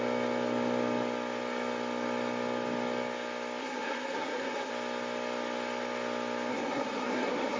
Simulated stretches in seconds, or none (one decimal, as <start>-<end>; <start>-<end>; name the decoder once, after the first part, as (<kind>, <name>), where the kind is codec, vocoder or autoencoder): 3.6-4.7 (codec, SNAC); 6.5-7.6